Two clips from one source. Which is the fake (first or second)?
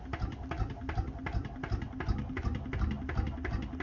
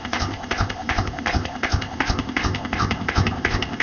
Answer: second